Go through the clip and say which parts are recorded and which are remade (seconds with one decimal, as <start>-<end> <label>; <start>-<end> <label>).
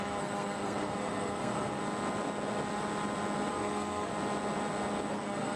0.0-1.8 remade; 1.8-3.5 recorded; 3.5-4.1 remade; 4.1-5.1 recorded; 5.1-5.6 remade